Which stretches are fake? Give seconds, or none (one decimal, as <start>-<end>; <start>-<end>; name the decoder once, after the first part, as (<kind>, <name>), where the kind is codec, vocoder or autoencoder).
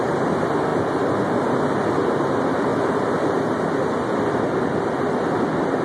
none